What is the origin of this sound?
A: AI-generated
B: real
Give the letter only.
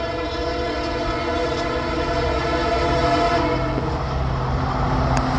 B